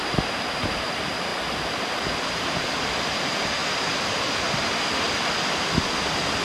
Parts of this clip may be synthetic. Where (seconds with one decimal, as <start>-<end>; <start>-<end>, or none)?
none